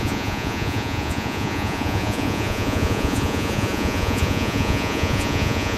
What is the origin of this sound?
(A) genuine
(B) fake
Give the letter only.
B